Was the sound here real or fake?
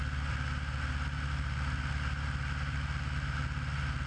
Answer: real